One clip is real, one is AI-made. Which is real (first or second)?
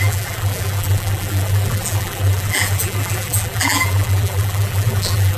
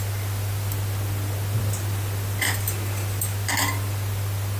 second